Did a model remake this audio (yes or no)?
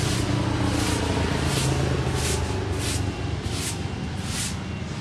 no